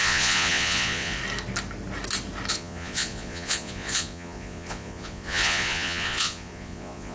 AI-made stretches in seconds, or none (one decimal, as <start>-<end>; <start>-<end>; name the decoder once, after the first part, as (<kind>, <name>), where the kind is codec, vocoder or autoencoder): 0.0-1.2 (vocoder, Vocos); 2.5-7.1